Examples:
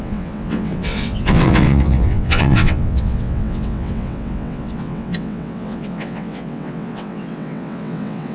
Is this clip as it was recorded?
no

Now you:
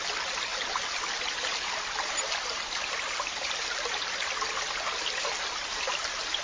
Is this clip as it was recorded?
yes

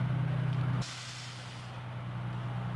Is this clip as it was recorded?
yes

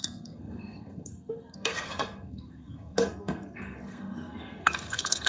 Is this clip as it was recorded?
no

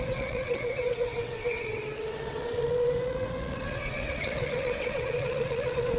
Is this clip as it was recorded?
no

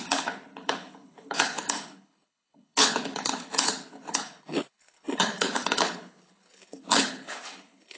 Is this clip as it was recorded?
no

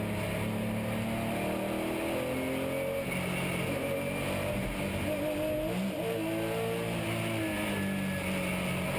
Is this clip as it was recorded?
yes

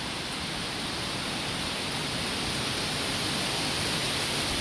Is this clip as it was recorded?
yes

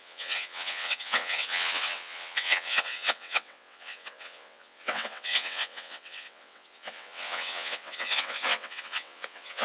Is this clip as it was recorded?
no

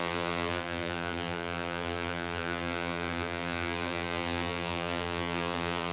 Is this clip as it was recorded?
no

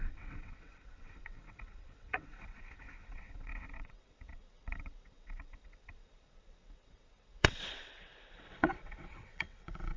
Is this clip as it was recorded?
no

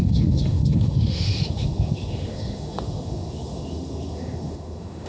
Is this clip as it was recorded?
no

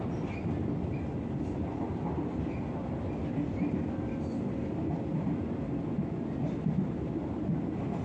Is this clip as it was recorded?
yes